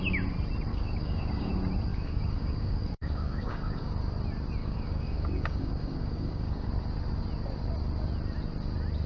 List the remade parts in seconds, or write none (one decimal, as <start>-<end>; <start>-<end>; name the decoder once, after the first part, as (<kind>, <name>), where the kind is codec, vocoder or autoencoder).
0.7-1.5 (codec, DAC); 1.9-3.9; 4.6-6.7